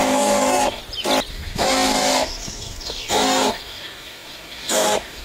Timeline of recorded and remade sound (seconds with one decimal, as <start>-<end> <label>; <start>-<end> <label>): 0.0-0.8 remade; 0.8-1.3 recorded; 1.3-5.2 remade